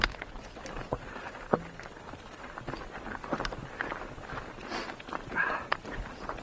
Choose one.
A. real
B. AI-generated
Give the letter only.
A